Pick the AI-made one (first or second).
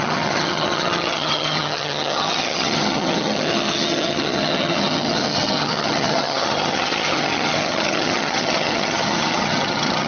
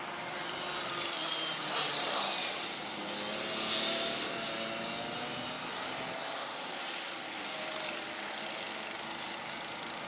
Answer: first